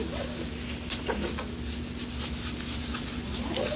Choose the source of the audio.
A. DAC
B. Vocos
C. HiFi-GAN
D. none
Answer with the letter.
D